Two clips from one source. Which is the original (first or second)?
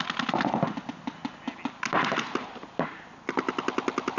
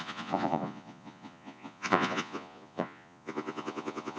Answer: first